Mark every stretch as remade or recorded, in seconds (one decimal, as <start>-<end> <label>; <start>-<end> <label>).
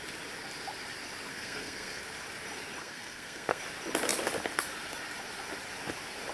0.0-1.3 recorded; 1.3-2.0 remade; 2.0-2.8 recorded; 2.8-3.6 remade; 3.6-6.3 recorded